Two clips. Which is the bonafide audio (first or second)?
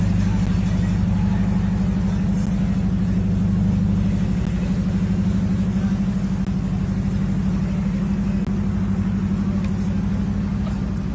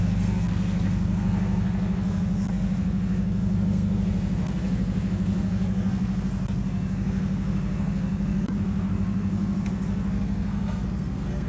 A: first